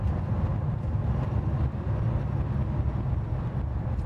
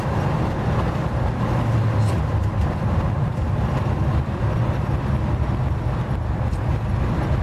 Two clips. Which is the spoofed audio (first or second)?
second